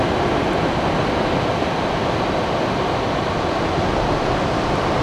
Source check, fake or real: real